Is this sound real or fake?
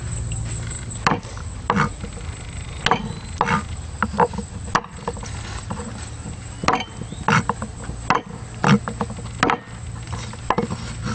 real